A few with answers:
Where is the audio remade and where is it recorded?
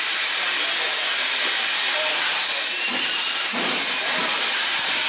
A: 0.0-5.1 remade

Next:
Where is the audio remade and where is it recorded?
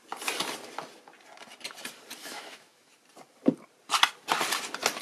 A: 0.0-2.2 recorded; 2.2-2.9 remade; 2.9-5.0 recorded